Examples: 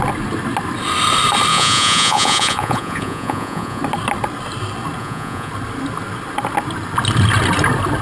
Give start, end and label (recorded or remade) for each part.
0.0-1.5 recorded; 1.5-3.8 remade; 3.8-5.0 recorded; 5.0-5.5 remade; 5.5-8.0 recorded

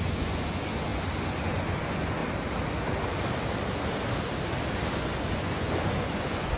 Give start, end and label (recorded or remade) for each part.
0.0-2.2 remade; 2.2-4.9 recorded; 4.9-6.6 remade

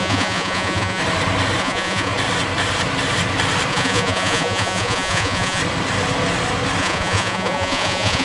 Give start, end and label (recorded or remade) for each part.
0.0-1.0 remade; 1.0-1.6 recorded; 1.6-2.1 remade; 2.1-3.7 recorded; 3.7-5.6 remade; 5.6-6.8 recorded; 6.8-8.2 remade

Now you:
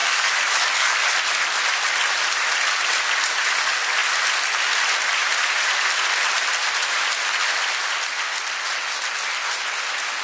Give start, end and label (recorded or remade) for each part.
0.0-1.0 remade; 1.0-10.2 recorded

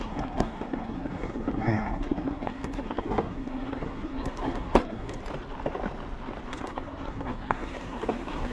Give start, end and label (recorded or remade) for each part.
0.0-5.2 remade; 5.2-6.5 recorded; 6.5-8.5 remade

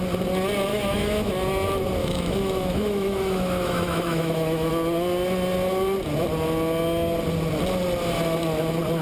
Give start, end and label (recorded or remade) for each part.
0.0-0.7 recorded; 0.7-1.3 remade; 1.3-2.0 recorded; 2.0-4.7 remade; 4.7-9.0 recorded